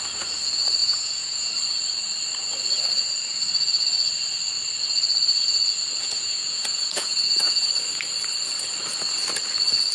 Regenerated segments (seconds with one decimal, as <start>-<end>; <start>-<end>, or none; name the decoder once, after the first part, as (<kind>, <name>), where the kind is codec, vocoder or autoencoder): 0.8-1.5 (vocoder, Vocos); 6.0-7.7